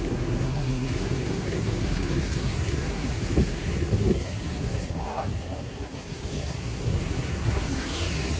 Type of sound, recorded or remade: remade